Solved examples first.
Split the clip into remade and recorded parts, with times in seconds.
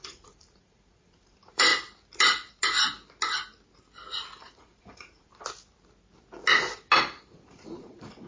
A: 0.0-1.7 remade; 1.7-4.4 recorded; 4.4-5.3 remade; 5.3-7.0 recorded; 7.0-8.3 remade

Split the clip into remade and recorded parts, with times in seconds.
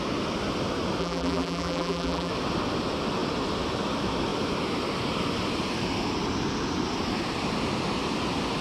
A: 0.0-1.0 recorded; 1.0-2.3 remade; 2.3-8.6 recorded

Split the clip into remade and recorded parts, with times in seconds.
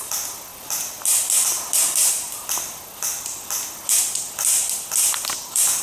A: 0.0-5.8 recorded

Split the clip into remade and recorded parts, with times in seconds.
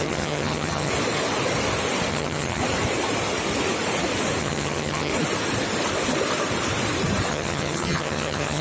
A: 0.0-0.9 remade; 0.9-2.1 recorded; 2.1-2.6 remade; 2.6-4.4 recorded; 4.4-5.1 remade; 5.1-7.3 recorded; 7.3-8.6 remade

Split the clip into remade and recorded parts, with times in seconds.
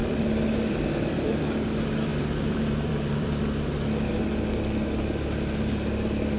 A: 0.0-1.4 remade; 1.4-2.1 recorded; 2.1-3.4 remade; 3.4-6.4 recorded